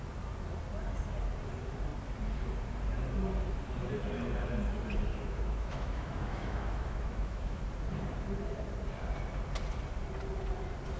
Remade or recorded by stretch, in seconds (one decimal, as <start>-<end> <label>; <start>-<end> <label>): 0.0-5.1 recorded; 5.1-7.6 remade; 7.6-11.0 recorded